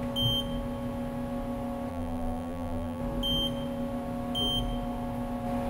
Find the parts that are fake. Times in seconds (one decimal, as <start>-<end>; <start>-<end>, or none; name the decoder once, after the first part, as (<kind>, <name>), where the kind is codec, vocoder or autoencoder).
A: 1.9-3.0 (vocoder, BigVGAN v2)